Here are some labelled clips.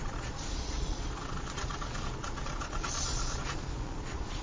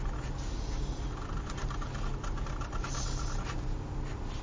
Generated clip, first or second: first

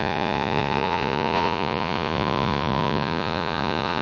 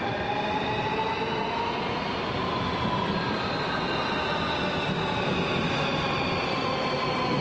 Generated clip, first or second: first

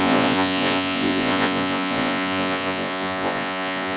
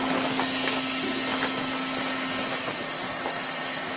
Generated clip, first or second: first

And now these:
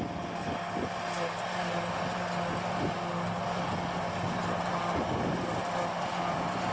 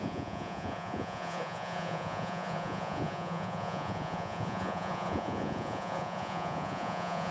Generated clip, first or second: second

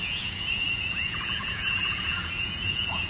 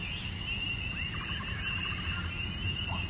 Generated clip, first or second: first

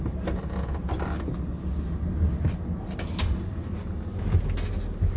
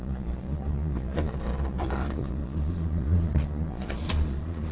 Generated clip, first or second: second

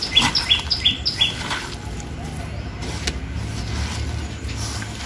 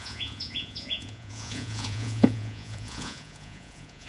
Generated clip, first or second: second